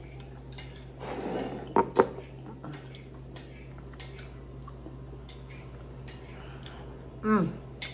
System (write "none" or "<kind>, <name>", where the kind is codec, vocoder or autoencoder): none